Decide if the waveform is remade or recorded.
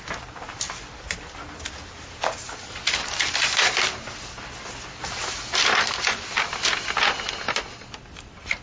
recorded